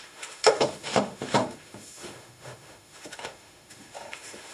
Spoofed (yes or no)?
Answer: yes